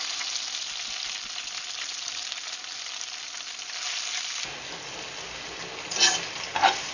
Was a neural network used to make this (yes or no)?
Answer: no